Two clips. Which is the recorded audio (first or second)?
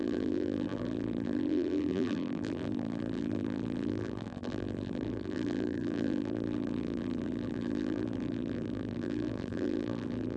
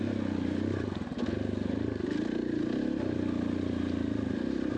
second